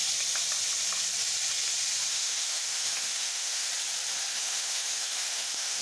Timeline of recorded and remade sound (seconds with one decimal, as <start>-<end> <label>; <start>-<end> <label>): 0.0-2.1 recorded; 2.1-3.7 remade; 3.7-4.3 recorded; 4.3-5.8 remade